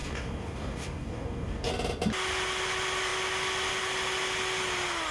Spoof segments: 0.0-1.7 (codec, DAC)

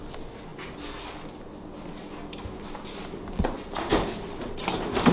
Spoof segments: none